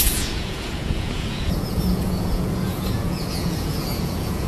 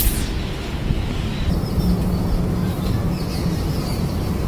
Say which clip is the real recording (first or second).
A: second